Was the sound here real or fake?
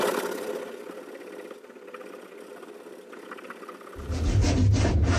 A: real